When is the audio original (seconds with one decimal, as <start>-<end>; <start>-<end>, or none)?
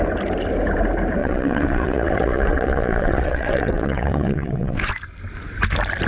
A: 0.0-1.2; 4.9-6.1